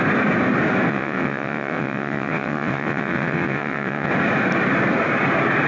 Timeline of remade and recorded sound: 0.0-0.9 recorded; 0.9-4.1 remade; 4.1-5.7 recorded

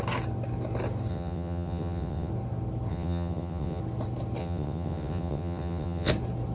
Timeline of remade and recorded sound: 0.0-1.1 recorded; 1.1-2.3 remade; 2.3-2.9 recorded; 2.9-3.8 remade; 3.8-4.4 recorded; 4.4-6.1 remade; 6.1-6.5 recorded

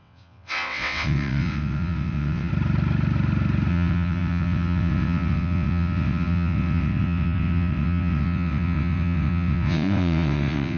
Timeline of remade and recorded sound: 0.0-2.5 remade; 2.5-3.7 recorded; 3.7-10.8 remade

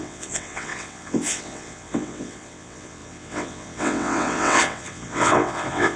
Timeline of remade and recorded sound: 0.0-6.0 remade

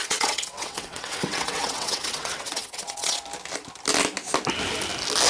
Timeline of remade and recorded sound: 0.0-3.2 remade; 3.2-5.3 recorded